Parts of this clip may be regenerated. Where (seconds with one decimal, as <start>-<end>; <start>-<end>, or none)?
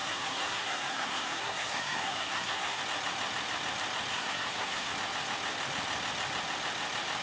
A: 0.0-2.8; 4.1-4.9